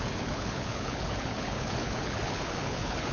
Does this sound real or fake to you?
fake